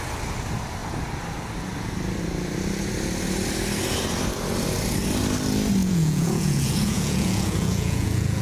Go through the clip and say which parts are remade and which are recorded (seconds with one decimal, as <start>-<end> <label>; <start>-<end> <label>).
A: 0.0-5.8 recorded; 5.8-8.4 remade